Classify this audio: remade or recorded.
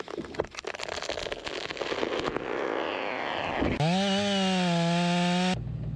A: recorded